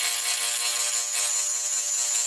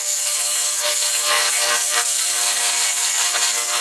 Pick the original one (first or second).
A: first